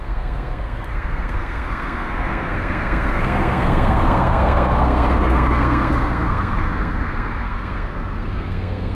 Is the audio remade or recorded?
remade